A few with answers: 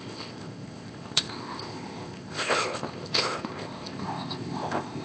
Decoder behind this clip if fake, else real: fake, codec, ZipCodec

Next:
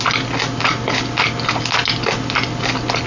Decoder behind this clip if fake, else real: real